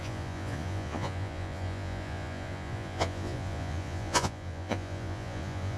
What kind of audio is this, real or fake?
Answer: fake